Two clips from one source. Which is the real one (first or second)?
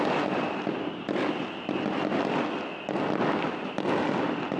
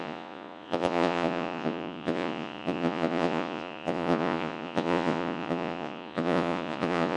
first